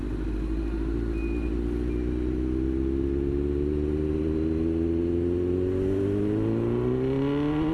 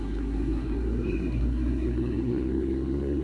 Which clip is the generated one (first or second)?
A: second